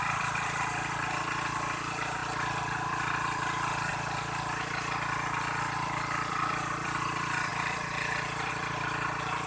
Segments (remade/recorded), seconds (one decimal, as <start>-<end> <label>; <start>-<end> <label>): 0.0-9.5 remade